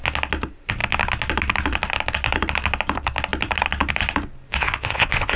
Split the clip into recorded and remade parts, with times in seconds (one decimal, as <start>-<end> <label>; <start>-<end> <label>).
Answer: 0.0-4.5 recorded; 4.5-5.4 remade